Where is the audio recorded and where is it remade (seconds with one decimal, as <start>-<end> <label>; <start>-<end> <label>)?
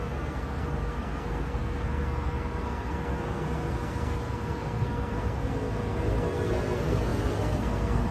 0.0-8.1 remade